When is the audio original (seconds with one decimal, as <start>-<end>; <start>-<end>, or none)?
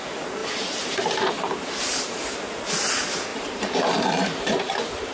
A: 0.0-0.4; 2.5-3.3; 4.6-5.1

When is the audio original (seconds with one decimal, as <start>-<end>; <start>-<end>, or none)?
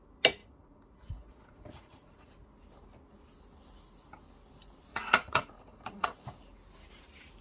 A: 0.0-0.4; 2.3-4.9; 6.2-7.4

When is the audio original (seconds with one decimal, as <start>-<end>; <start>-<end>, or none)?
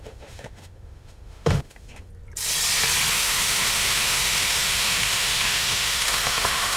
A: 2.1-3.1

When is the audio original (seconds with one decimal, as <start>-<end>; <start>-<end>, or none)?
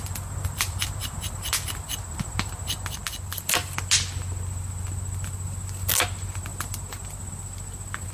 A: 0.0-8.1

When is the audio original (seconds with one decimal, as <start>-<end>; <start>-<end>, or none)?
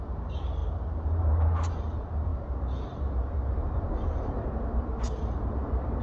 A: none